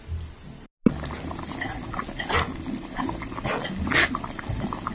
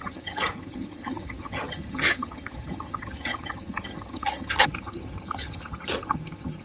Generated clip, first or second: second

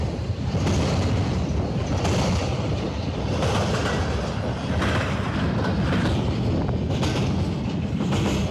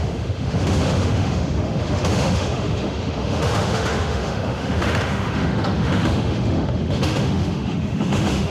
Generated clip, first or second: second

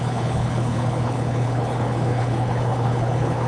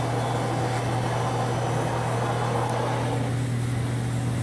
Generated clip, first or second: first